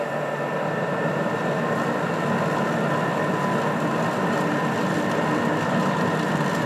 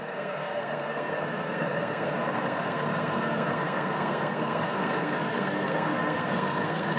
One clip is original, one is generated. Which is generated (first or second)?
second